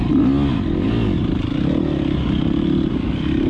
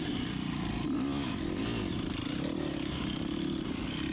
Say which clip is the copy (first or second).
second